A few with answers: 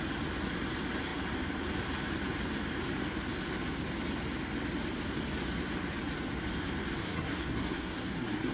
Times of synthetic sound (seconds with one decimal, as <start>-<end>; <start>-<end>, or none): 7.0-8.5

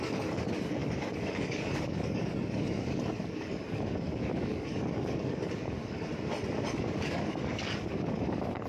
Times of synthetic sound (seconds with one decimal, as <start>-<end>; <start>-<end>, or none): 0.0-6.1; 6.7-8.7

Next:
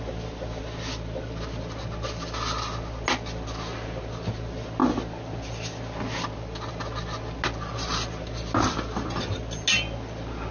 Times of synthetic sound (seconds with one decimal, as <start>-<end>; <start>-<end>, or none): none